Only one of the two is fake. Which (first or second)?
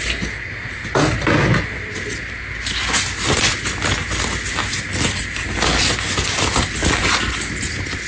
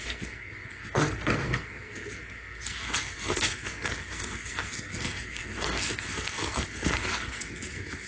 second